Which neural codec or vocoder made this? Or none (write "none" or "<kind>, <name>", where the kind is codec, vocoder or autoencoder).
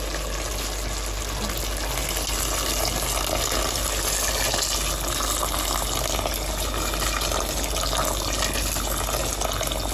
none